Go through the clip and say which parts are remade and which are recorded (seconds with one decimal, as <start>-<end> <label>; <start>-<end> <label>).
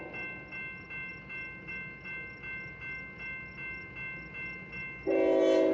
0.0-5.7 recorded